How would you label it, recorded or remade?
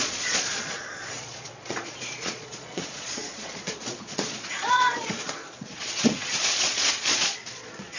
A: remade